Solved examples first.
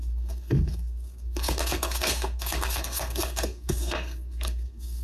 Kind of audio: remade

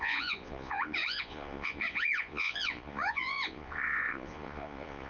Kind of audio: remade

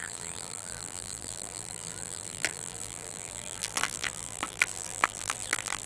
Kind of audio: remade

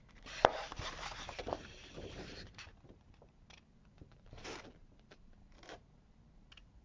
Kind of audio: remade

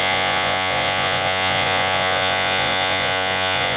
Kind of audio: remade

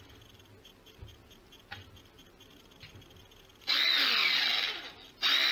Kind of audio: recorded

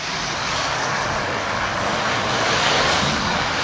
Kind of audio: remade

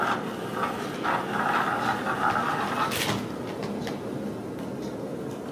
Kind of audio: recorded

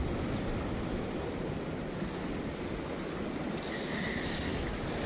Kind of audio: recorded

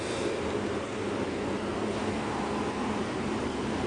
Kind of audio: remade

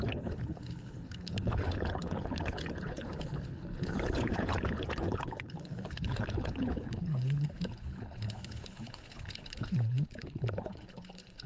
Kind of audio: remade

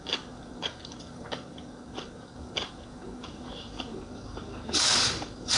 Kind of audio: remade